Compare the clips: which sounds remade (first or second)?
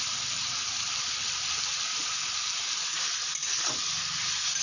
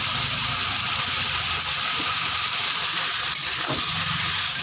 second